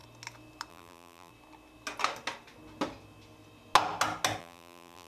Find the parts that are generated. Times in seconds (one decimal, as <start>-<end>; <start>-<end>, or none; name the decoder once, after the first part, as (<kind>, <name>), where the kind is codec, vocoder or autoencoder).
0.7-1.3 (vocoder, BigVGAN v2); 4.4-5.1